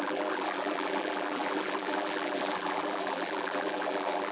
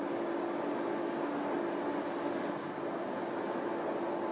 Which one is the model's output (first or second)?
first